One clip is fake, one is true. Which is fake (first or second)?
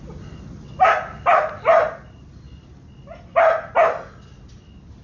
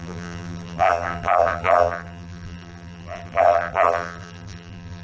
second